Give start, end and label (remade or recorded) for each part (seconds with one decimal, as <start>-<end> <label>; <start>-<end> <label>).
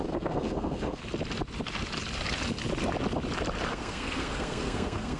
0.0-1.0 remade; 1.0-3.7 recorded; 3.7-5.2 remade